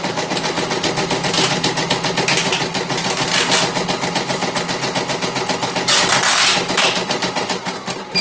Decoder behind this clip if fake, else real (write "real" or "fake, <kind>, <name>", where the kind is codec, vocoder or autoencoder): real